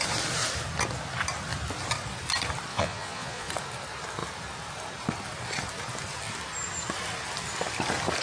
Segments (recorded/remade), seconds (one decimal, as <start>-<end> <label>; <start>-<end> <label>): 0.0-2.7 recorded; 2.7-3.5 remade; 3.5-8.2 recorded